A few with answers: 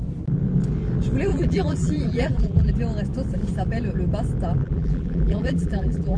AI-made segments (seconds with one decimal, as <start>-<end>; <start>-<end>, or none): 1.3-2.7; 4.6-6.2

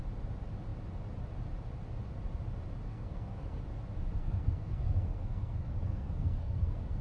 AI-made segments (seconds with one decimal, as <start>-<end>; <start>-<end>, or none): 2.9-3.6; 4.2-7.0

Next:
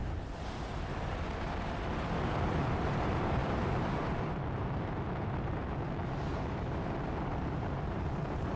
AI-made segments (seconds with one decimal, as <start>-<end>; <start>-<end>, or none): 0.0-8.6